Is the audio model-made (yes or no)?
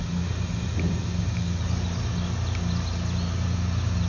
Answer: no